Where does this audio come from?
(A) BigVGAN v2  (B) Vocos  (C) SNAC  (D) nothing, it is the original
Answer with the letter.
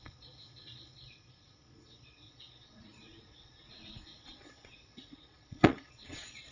B